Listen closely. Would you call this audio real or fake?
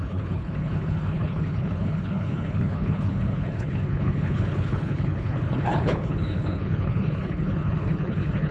fake